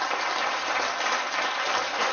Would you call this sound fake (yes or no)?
no